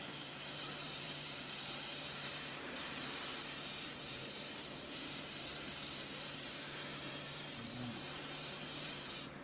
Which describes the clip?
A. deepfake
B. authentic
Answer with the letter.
A